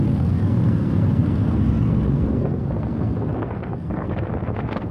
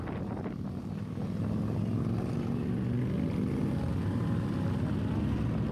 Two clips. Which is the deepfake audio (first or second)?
first